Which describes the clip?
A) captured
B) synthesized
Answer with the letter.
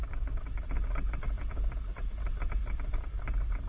A